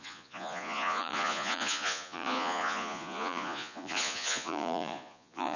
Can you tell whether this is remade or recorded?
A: remade